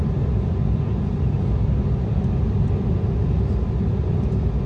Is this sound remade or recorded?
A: recorded